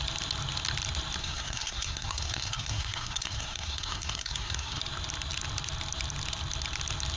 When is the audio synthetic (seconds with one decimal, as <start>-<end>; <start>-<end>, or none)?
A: 1.2-4.8

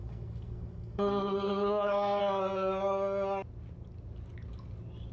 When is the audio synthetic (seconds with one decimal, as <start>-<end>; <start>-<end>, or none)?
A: 0.0-2.2

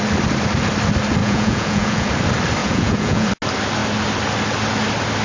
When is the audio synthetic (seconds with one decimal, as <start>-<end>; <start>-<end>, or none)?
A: 1.2-2.1; 2.6-3.3

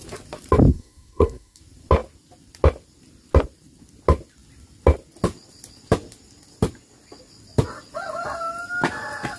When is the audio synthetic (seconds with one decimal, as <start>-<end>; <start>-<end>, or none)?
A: 0.7-1.6